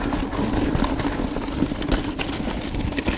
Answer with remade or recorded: recorded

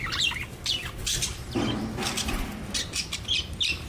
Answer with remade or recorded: recorded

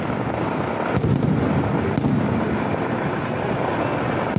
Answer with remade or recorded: recorded